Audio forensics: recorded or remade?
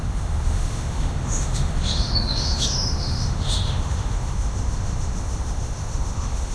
remade